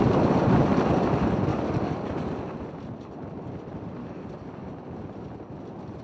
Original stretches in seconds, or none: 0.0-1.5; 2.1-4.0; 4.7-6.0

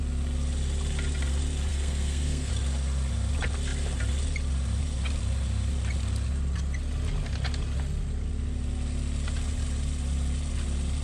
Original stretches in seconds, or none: 0.0-1.7; 2.5-11.0